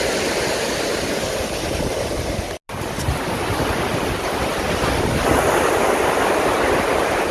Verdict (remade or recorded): recorded